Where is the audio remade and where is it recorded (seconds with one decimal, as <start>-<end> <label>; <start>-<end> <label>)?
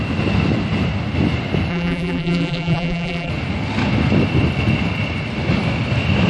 0.0-1.7 recorded; 1.7-3.3 remade; 3.3-6.3 recorded